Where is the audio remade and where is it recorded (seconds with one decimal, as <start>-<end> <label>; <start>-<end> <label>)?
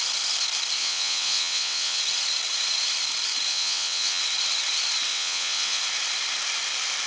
0.0-0.8 recorded; 0.8-2.0 remade; 2.0-3.5 recorded; 3.5-4.2 remade; 4.2-5.1 recorded; 5.1-5.8 remade; 5.8-7.1 recorded